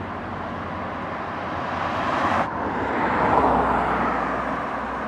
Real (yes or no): yes